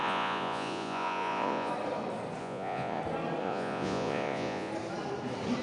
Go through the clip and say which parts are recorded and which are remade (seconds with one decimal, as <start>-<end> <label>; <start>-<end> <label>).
0.0-1.7 remade; 1.7-2.4 recorded; 2.4-3.0 remade; 3.0-3.4 recorded; 3.4-4.7 remade; 4.7-5.6 recorded

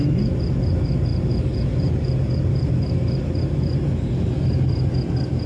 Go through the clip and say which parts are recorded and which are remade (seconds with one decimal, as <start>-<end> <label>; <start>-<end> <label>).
0.0-5.5 recorded